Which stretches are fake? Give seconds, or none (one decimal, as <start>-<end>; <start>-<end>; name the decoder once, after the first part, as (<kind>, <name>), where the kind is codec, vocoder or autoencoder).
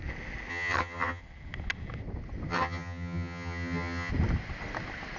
0.5-1.2 (vocoder, HiFi-GAN); 2.5-4.1